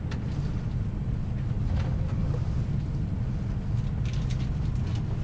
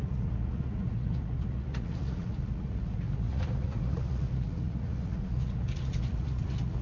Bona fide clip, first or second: first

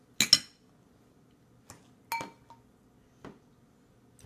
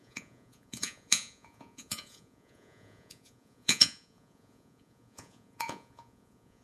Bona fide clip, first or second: first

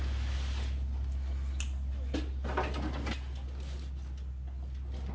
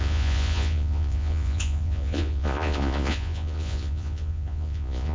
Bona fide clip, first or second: first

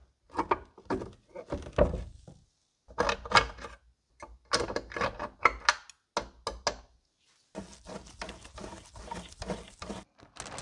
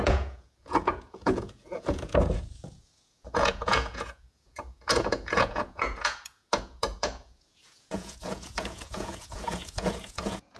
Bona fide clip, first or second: first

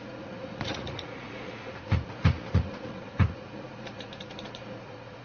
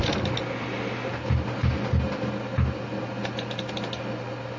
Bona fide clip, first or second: second